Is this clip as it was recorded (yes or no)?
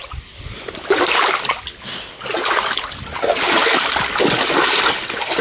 yes